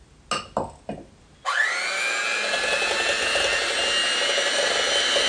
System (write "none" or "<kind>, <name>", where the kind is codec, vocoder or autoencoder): none